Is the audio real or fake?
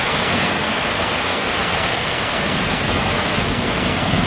fake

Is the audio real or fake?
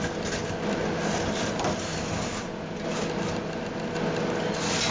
real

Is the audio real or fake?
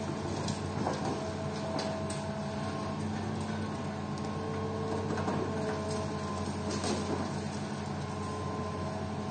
real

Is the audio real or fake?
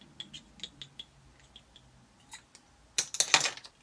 real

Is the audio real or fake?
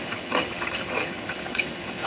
fake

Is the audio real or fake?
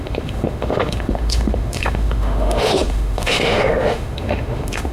fake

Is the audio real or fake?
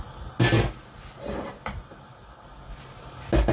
real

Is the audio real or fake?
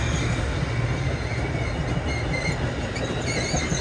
real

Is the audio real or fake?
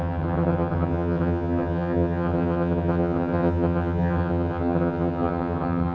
fake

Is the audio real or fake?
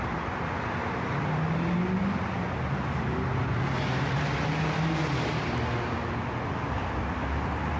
real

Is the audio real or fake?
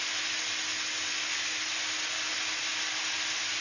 real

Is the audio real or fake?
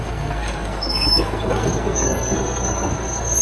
fake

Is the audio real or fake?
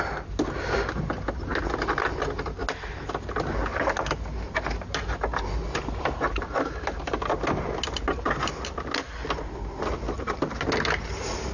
real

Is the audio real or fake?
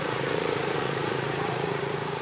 fake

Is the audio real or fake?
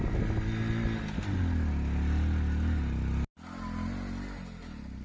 real